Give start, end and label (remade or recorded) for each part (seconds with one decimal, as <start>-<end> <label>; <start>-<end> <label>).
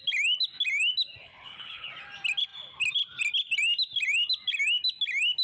0.0-1.2 recorded; 1.2-1.9 remade; 1.9-5.4 recorded